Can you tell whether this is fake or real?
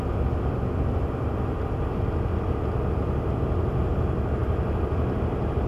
real